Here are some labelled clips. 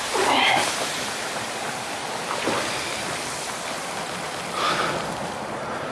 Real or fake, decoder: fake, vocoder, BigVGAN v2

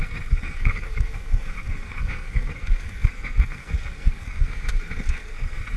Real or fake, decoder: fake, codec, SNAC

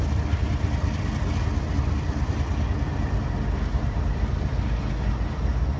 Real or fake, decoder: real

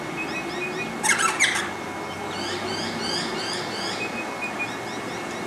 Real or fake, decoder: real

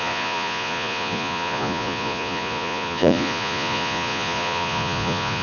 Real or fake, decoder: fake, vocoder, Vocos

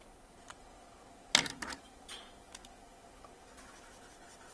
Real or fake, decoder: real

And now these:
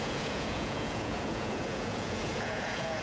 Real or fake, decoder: fake, vocoder, Vocos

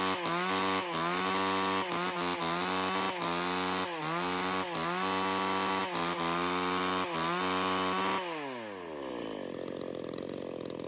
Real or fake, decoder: real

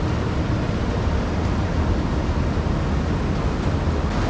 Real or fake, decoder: real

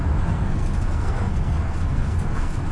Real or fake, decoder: fake, codec, SNAC